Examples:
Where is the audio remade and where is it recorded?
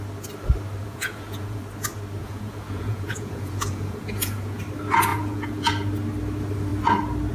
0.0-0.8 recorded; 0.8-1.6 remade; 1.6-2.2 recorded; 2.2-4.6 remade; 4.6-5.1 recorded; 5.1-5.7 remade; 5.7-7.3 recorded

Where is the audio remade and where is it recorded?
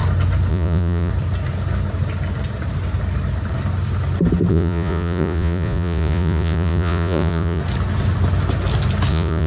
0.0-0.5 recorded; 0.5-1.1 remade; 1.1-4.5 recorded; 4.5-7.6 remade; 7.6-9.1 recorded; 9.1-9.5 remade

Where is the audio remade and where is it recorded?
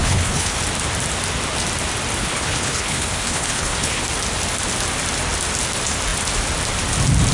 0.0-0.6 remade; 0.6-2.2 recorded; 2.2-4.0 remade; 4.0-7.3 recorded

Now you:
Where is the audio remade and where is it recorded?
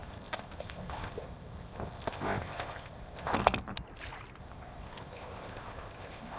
0.0-3.3 remade; 3.3-4.4 recorded; 4.4-6.4 remade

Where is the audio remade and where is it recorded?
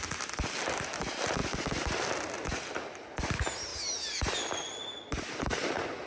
0.0-6.1 recorded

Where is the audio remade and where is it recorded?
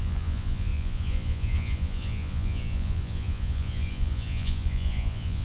0.0-5.4 remade